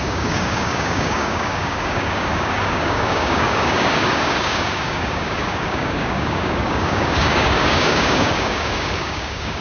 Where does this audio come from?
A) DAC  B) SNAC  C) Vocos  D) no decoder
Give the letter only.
A